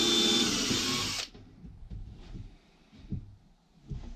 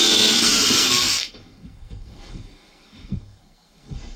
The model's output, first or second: second